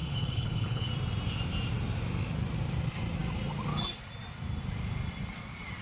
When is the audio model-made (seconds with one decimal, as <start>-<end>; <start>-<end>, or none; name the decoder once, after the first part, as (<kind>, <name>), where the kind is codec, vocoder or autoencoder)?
0.0-0.9 (codec, HILCodec)